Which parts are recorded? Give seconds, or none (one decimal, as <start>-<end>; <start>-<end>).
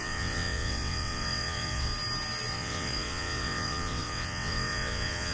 1.9-2.5